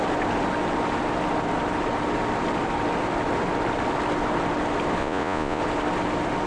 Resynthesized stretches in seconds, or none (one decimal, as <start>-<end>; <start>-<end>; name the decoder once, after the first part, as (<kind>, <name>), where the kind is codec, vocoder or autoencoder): 5.0-5.6 (vocoder, Vocos)